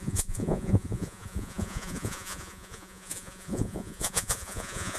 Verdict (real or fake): fake